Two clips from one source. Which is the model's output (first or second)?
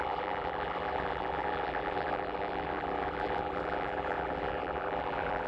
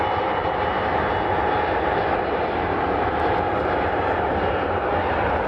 first